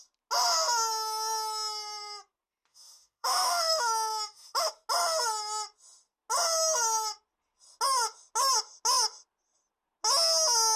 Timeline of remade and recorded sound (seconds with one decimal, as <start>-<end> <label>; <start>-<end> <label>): 0.0-2.7 recorded; 2.7-4.7 remade; 4.7-10.8 recorded